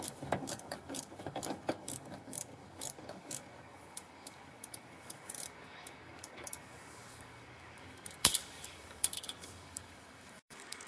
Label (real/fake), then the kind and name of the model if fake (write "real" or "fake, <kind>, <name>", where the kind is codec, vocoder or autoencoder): fake, codec, DAC